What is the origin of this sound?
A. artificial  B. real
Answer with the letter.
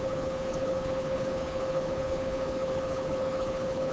A